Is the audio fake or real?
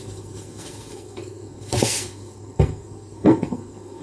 fake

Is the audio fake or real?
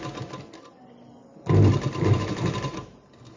real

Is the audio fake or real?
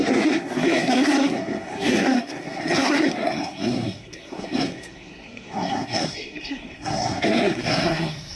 fake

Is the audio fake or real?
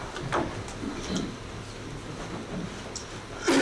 real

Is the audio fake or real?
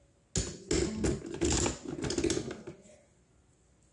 real